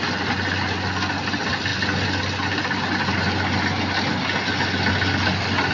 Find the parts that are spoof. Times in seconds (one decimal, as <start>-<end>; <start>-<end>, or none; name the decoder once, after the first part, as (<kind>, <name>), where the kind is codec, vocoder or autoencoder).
none